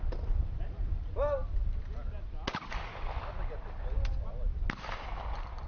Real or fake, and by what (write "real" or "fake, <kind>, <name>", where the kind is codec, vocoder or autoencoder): real